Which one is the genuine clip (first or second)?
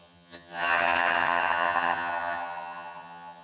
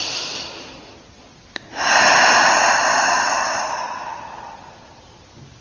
second